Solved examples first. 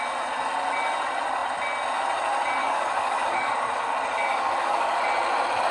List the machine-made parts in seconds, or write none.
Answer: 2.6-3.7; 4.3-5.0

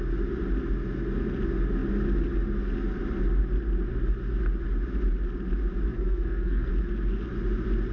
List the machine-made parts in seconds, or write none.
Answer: 5.9-6.7

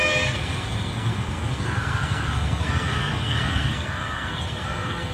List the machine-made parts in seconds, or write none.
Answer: 0.0-5.1

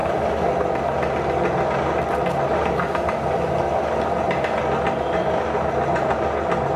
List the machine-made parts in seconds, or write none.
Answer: none

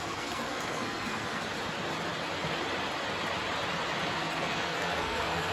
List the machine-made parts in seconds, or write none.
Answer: 0.0-1.4; 4.1-5.5